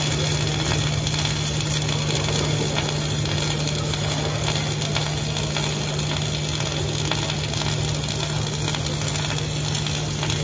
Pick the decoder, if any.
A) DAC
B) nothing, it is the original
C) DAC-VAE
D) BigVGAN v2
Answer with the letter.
B